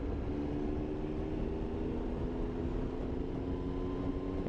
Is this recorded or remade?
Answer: recorded